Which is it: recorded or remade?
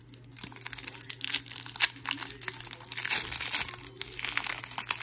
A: recorded